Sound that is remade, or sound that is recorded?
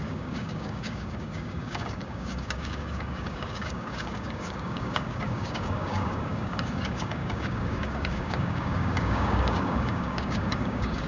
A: remade